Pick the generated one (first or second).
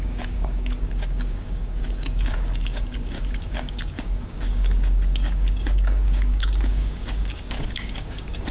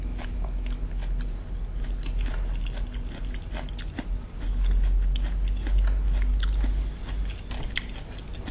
first